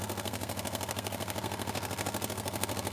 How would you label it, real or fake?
fake